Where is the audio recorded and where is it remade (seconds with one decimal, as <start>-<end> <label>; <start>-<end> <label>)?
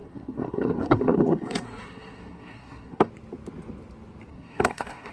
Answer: 0.0-3.1 remade; 3.1-4.3 recorded; 4.3-5.1 remade